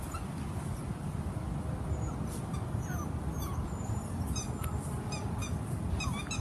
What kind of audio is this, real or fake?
real